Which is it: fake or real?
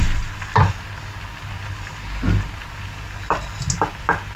real